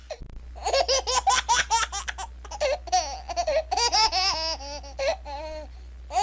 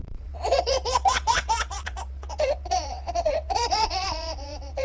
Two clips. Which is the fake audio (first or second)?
second